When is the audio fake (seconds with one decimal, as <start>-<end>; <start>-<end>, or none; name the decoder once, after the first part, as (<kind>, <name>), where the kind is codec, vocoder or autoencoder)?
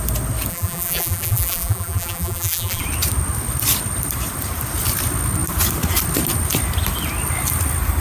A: 0.5-2.8 (vocoder, BigVGAN v2)